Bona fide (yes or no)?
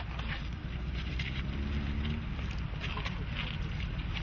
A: yes